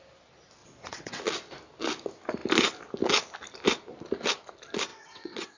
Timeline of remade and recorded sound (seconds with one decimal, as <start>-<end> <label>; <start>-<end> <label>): 0.0-0.6 recorded; 0.6-1.2 remade; 1.2-4.9 recorded; 4.9-5.6 remade